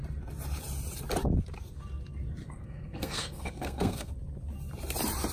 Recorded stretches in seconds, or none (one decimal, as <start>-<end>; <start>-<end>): 0.0-2.4; 4.1-5.3